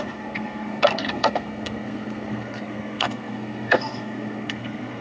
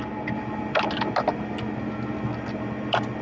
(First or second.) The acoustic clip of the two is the second